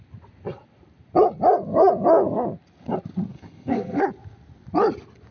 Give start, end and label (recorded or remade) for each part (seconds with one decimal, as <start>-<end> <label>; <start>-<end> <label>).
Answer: 0.0-3.3 recorded; 3.3-4.0 remade; 4.0-5.3 recorded